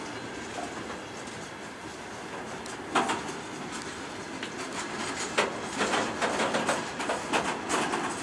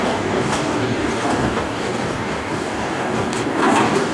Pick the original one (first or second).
first